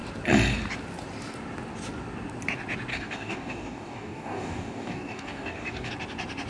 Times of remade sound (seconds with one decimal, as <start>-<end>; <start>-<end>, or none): 2.9-5.9